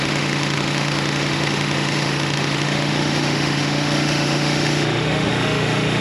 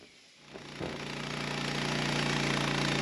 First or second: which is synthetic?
first